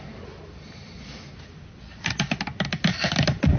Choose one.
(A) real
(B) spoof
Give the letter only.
A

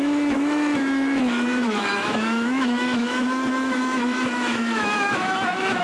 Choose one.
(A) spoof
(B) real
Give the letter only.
A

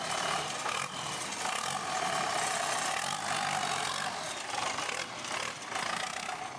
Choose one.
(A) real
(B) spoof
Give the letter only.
A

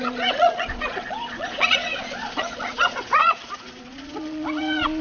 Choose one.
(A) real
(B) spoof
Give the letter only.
B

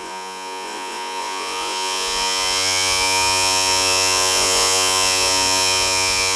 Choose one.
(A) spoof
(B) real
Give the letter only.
A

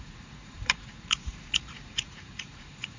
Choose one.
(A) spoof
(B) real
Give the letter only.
A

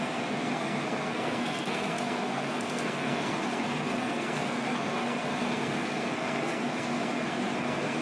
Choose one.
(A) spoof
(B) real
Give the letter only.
A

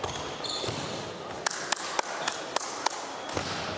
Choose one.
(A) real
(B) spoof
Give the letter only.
A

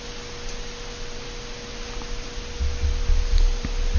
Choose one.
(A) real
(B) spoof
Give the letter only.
A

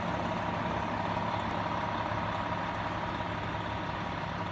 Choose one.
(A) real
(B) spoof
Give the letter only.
A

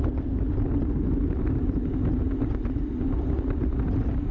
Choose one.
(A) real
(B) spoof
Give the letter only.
A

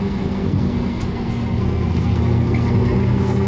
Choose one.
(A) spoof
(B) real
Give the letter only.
A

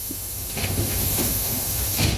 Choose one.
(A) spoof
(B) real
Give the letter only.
A